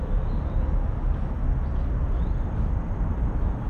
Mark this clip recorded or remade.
recorded